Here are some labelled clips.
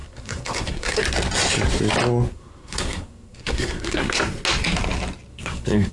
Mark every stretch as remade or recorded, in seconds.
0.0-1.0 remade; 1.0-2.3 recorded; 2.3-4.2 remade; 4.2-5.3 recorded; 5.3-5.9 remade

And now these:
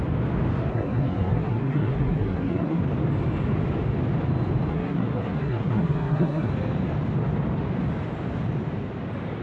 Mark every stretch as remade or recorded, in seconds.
0.0-0.7 recorded; 0.7-2.8 remade; 2.8-4.7 recorded; 4.7-6.5 remade; 6.5-9.4 recorded

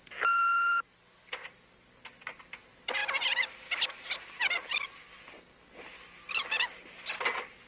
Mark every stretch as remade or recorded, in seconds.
0.0-7.7 recorded

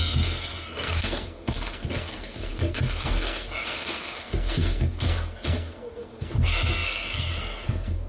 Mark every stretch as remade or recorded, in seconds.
0.0-8.1 remade

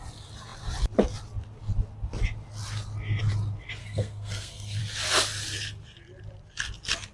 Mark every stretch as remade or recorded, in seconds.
0.0-3.8 recorded; 3.8-4.8 remade; 4.8-7.1 recorded